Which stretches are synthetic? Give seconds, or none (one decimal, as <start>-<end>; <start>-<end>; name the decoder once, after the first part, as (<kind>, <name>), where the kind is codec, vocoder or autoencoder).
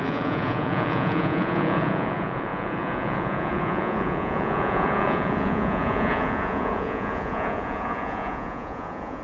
0.0-9.2 (vocoder, Vocos)